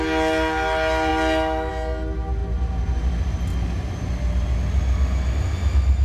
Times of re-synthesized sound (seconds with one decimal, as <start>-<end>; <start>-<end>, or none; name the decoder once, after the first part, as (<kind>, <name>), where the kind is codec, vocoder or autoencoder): 2.4-3.1 (vocoder, BigVGAN v2); 3.5-4.1